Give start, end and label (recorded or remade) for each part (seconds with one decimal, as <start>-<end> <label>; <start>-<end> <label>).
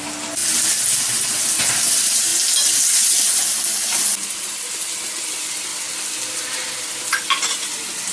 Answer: 0.0-8.1 recorded